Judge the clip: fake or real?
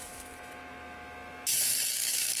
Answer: fake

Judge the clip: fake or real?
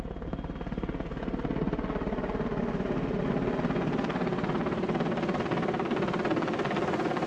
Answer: real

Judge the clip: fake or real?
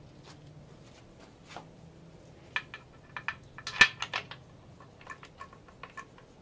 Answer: real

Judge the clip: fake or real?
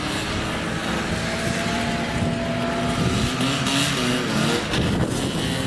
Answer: real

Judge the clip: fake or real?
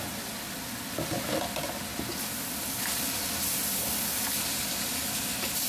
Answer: real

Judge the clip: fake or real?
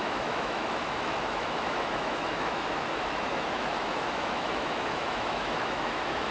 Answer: fake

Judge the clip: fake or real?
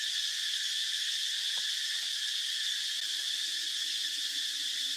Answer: real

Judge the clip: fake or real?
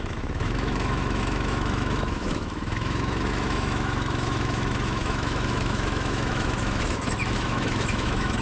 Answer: fake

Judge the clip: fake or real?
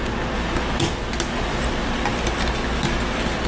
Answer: real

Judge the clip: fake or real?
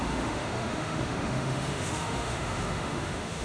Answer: fake